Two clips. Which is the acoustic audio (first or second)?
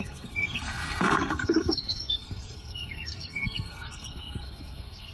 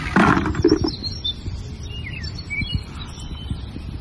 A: second